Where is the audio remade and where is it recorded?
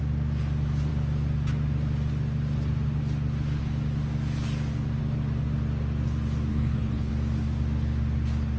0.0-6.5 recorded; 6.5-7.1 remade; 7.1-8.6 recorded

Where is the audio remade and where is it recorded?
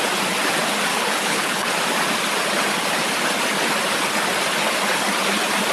0.0-0.9 recorded; 0.9-1.7 remade; 1.7-5.7 recorded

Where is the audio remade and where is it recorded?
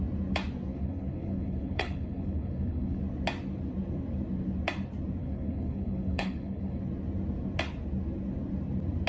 0.0-0.7 recorded; 0.7-3.0 remade; 3.0-5.2 recorded; 5.2-6.8 remade; 6.8-9.1 recorded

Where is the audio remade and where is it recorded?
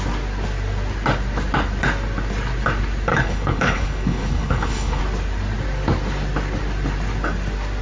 0.0-3.1 recorded; 3.1-5.0 remade; 5.0-7.8 recorded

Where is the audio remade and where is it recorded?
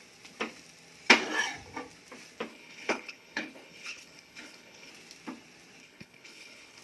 0.0-2.5 recorded; 2.5-4.9 remade; 4.9-5.8 recorded; 5.8-6.8 remade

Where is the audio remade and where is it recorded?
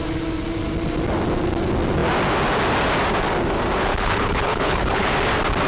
0.0-3.9 recorded; 3.9-5.1 remade; 5.1-5.7 recorded